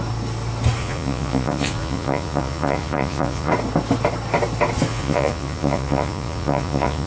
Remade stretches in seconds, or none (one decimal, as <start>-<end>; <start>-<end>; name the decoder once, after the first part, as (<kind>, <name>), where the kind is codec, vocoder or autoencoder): 0.8-3.5 (vocoder, Vocos); 4.9-7.1